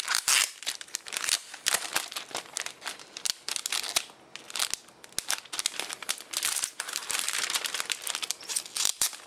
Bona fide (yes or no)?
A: yes